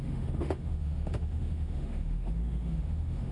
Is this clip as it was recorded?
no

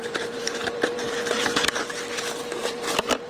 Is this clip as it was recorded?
no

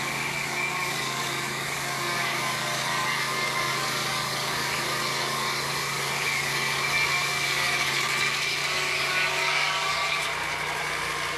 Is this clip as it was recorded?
no